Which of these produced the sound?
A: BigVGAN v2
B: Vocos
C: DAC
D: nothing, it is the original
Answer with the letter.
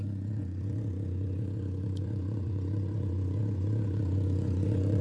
B